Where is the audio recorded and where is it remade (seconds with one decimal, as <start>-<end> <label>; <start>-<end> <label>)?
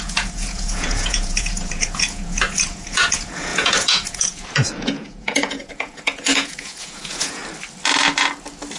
0.0-7.4 remade; 7.4-8.8 recorded